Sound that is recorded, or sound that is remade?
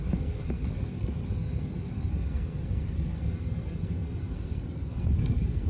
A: remade